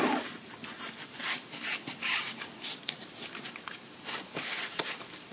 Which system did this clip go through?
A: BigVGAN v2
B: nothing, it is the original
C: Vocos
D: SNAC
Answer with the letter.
A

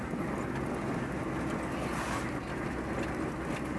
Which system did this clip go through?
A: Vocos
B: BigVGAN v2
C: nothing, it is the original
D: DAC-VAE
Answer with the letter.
C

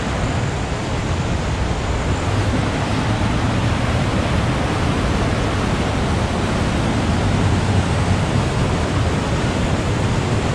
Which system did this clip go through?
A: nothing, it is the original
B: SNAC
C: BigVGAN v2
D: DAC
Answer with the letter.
A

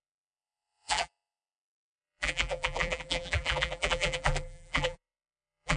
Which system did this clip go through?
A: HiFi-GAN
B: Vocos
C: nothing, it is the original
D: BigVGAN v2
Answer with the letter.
D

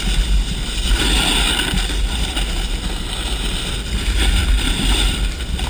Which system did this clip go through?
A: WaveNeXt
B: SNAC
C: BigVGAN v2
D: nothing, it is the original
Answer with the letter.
D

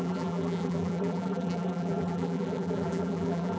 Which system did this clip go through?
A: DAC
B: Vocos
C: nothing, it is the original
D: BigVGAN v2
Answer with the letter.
D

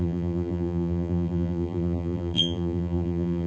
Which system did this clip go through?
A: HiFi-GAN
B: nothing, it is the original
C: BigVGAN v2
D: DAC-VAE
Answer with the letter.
C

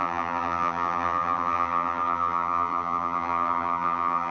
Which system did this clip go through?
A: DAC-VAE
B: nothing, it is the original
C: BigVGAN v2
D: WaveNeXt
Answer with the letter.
C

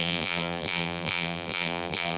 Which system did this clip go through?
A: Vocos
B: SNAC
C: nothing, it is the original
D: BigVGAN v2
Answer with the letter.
D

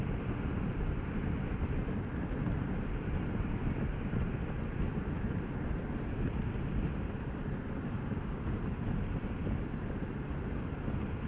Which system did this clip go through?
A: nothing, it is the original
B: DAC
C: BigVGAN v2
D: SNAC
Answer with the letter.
A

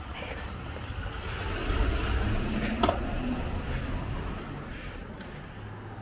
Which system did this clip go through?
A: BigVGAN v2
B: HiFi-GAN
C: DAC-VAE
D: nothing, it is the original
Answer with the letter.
D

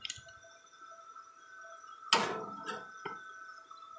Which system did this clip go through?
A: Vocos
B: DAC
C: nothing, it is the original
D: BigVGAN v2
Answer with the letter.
C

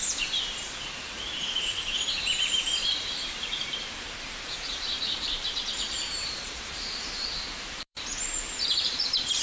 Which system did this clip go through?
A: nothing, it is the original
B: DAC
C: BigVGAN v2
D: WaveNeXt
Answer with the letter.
C